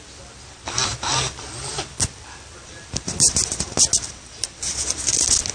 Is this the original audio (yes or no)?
yes